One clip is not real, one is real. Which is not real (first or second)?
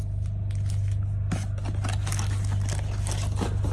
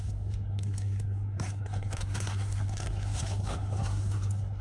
second